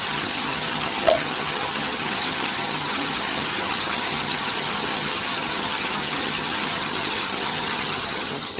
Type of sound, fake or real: fake